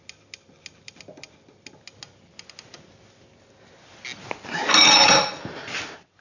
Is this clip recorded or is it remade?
recorded